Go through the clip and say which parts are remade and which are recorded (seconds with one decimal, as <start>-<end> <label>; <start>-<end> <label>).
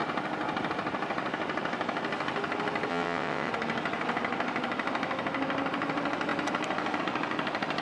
0.0-2.9 recorded; 2.9-3.5 remade; 3.5-7.8 recorded